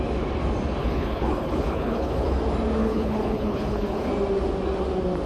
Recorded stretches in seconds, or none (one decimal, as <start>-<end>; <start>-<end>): 0.0-0.8; 2.4-2.8; 4.1-5.3